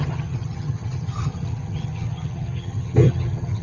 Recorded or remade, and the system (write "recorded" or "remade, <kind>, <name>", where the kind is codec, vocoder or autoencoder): remade, vocoder, HiFi-GAN